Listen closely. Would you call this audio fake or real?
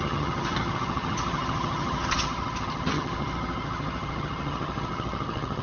fake